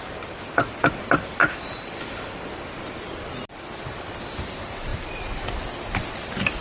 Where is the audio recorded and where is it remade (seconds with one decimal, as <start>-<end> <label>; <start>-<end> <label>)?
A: 0.0-6.6 remade